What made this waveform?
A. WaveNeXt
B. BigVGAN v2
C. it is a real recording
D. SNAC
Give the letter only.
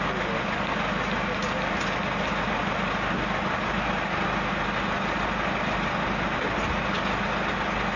C